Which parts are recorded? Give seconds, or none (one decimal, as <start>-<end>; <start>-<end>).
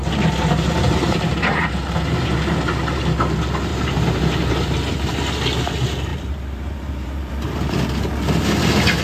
2.2-3.7; 4.2-6.1; 7.3-9.0